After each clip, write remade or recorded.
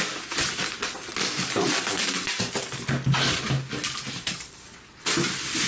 recorded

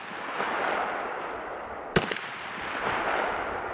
recorded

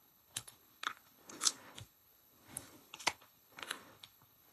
remade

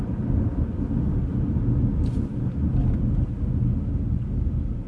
recorded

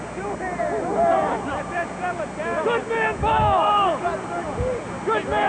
recorded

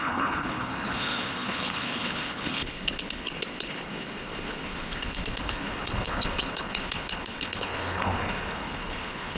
remade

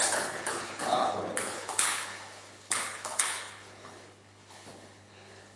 remade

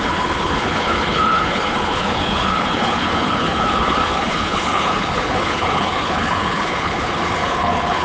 remade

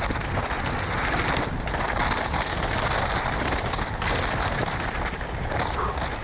recorded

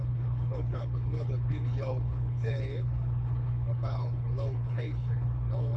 remade